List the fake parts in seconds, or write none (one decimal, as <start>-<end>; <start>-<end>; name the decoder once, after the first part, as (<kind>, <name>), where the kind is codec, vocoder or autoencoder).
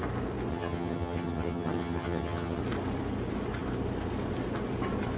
0.5-2.6 (vocoder, HiFi-GAN)